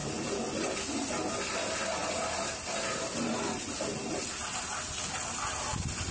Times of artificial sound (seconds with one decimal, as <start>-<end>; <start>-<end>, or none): none